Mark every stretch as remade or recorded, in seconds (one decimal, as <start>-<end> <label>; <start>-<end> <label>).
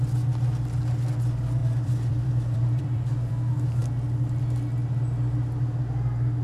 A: 0.0-1.6 recorded; 1.6-3.3 remade; 3.3-6.4 recorded